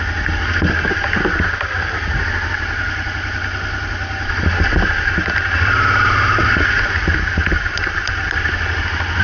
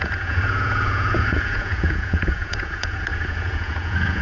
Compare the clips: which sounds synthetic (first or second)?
second